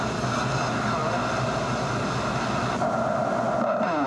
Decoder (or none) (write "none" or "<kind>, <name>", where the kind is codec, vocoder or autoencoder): none